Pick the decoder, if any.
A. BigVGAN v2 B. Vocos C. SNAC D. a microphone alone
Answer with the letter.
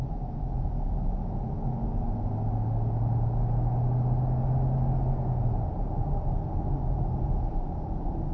D